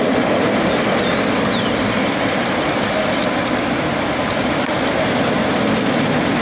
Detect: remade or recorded recorded